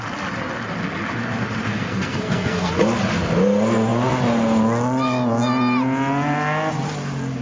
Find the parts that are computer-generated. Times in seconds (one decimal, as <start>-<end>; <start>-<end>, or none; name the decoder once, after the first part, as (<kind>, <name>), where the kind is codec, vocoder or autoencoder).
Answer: 1.7-2.7 (codec, SNAC)